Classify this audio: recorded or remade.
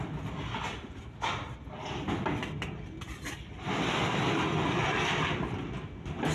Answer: recorded